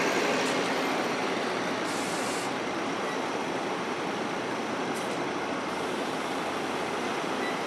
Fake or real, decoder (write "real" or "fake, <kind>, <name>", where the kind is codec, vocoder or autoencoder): real